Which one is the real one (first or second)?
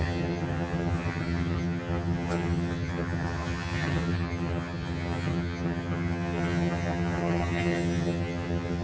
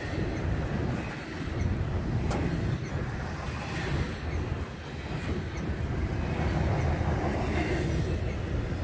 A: second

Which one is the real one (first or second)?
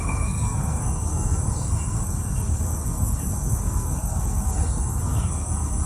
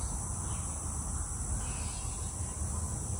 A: second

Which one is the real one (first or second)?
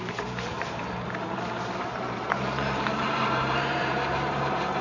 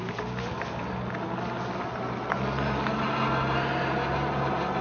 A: second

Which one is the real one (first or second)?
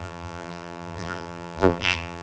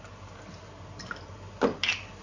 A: second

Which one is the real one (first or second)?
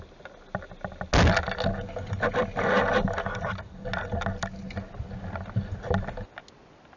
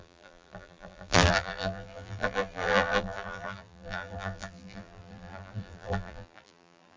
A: first